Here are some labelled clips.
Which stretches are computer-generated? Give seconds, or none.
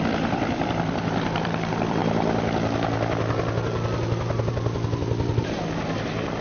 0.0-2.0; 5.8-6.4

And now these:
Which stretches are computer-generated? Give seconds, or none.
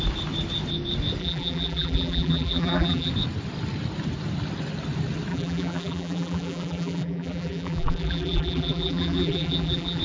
1.2-3.1; 5.3-10.0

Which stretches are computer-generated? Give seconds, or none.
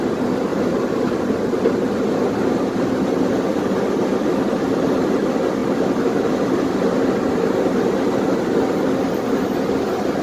0.5-1.1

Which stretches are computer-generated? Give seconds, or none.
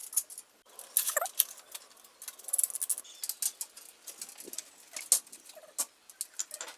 none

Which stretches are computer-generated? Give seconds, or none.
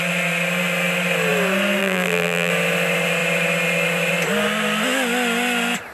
1.8-2.5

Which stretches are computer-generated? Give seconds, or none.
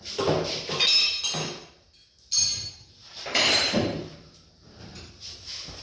2.4-5.1